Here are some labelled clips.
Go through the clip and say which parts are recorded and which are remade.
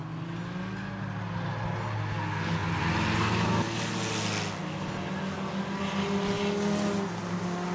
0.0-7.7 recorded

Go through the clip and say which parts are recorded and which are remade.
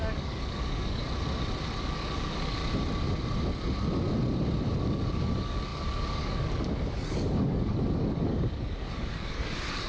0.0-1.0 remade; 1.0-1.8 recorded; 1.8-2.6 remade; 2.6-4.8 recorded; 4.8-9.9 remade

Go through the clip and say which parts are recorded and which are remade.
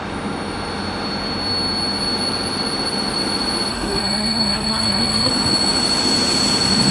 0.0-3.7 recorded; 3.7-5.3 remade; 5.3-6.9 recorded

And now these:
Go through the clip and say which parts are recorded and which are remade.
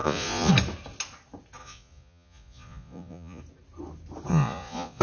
0.0-0.5 remade; 0.5-1.6 recorded; 1.6-3.4 remade; 3.4-4.3 recorded; 4.3-5.0 remade